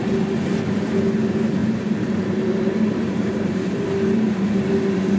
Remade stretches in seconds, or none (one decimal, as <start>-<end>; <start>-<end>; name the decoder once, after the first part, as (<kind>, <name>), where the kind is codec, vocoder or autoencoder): 1.6-4.7 (vocoder, BigVGAN v2)